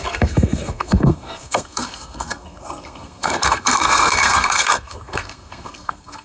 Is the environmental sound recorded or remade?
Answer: remade